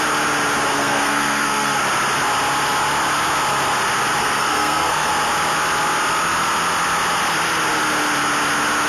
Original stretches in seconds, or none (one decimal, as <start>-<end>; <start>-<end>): 0.0-0.7; 1.8-4.2; 5.1-8.9